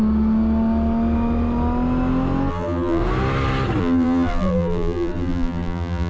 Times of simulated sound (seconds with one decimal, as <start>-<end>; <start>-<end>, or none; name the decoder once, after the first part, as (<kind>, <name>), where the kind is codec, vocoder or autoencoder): 2.5-3.0 (vocoder, BigVGAN v2); 3.8-6.1